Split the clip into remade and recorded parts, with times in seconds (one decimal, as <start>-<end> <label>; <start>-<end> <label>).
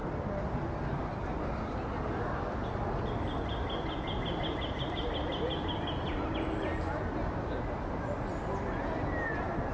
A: 0.0-9.7 recorded